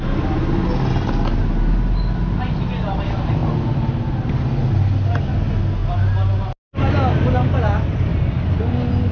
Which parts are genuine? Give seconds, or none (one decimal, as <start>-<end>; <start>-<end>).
0.0-9.1